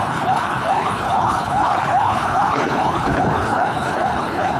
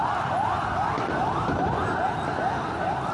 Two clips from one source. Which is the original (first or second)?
second